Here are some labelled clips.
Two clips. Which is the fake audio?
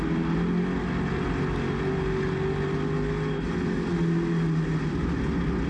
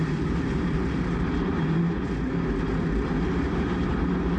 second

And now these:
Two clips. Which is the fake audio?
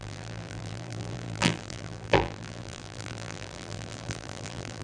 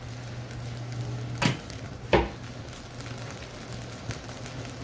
first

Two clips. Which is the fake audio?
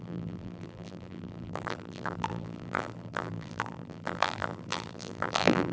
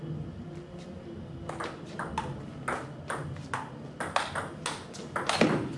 first